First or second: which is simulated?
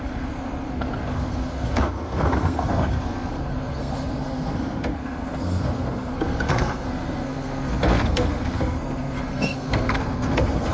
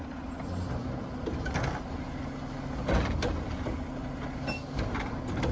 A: first